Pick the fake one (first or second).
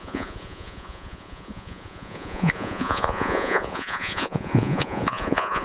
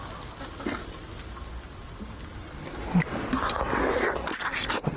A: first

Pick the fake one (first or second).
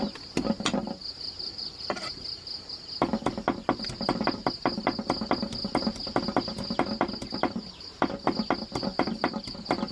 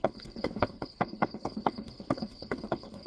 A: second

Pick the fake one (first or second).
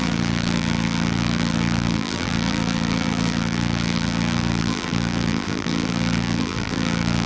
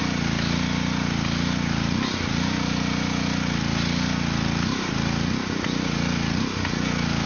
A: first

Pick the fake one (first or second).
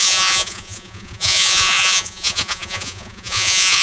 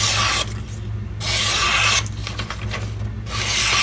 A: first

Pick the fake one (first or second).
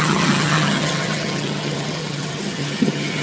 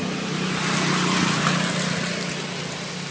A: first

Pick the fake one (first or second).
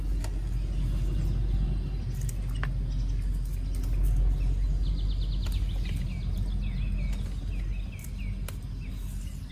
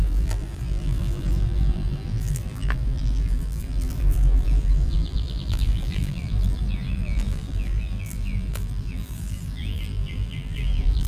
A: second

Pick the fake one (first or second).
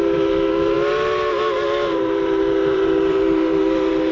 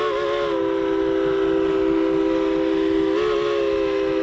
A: first